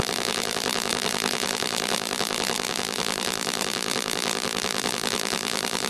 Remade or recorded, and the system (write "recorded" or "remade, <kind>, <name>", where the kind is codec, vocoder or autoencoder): remade, vocoder, BigVGAN v2